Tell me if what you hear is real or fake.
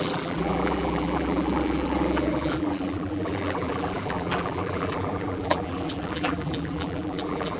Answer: fake